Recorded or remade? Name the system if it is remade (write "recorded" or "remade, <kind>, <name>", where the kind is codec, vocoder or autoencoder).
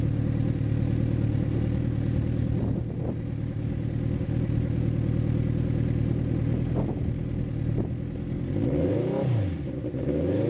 recorded